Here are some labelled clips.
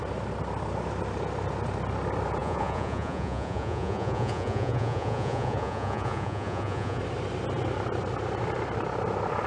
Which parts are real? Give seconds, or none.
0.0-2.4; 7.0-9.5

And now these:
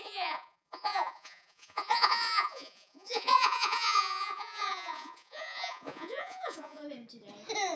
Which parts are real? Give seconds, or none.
6.8-7.8

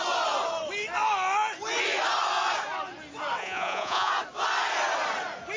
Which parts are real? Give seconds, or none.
0.0-3.4; 4.1-5.6

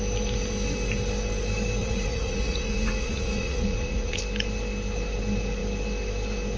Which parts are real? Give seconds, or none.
0.0-1.8; 4.2-6.6